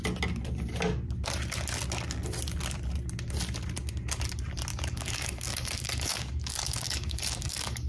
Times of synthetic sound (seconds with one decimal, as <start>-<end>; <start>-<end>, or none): 4.7-7.9